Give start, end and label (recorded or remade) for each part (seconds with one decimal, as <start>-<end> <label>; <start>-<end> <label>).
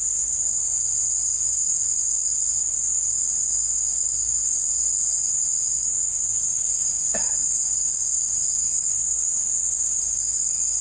0.0-0.6 remade; 0.6-1.2 recorded; 1.2-10.8 remade